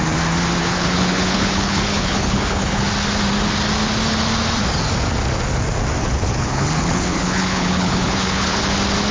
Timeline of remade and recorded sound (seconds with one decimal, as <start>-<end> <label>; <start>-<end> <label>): 0.0-0.6 recorded; 0.6-2.9 remade; 2.9-6.0 recorded; 6.0-8.6 remade; 8.6-9.1 recorded